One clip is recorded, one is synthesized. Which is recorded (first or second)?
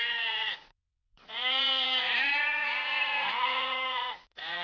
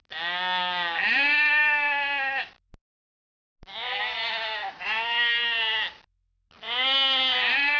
second